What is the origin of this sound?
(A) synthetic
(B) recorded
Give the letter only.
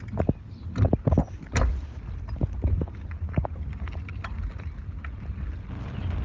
B